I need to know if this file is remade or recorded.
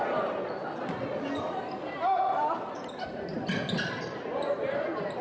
recorded